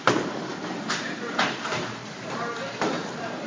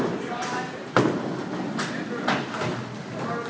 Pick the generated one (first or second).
first